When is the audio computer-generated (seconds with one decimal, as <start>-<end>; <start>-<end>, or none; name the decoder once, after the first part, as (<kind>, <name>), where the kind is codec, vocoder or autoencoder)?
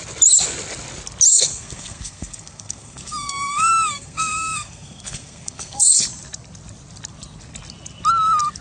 1.3-6.0 (codec, SNAC)